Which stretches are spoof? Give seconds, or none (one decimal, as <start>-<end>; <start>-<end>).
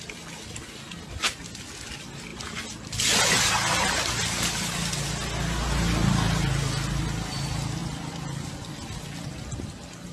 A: none